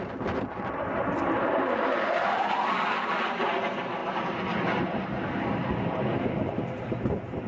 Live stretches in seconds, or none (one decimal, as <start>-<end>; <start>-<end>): 0.0-7.5